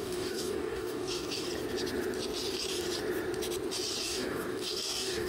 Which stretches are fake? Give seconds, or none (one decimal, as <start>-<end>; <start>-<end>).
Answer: 0.0-1.5; 4.0-5.3